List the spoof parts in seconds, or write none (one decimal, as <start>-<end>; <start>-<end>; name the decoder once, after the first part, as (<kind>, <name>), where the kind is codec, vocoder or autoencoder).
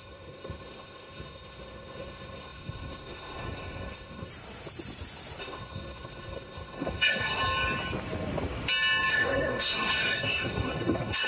0.0-4.3 (codec, SNAC); 5.4-7.4; 9.1-11.3